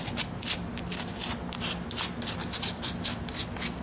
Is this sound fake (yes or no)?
no